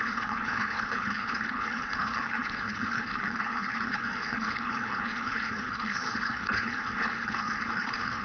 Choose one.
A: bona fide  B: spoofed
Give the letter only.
B